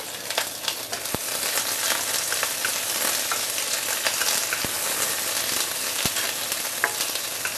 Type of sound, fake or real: real